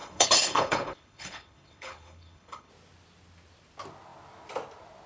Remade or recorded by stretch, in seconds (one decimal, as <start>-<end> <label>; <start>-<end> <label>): 0.0-2.7 remade; 2.7-5.1 recorded